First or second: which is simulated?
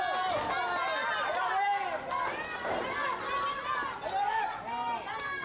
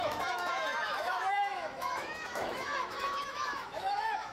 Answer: second